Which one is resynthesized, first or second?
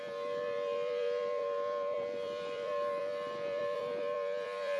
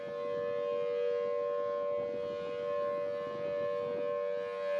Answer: first